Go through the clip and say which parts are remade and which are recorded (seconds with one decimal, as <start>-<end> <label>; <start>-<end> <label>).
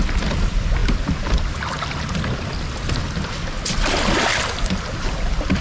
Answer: 0.0-5.6 recorded